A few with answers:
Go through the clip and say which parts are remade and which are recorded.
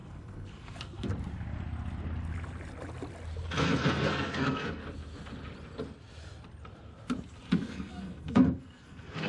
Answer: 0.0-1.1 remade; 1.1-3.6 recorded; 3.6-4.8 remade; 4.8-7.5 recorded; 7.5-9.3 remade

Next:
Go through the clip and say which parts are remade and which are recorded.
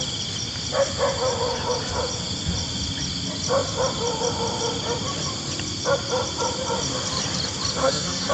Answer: 0.0-7.8 recorded; 7.8-8.3 remade